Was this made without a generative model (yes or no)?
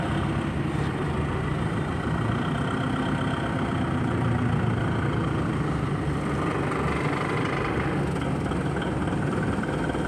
yes